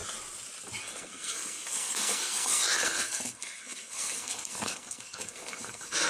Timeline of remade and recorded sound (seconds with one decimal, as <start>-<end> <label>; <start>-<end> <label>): 0.0-0.8 recorded; 0.8-6.1 remade